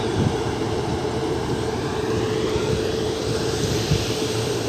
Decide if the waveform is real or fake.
fake